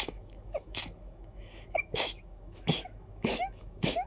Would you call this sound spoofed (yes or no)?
yes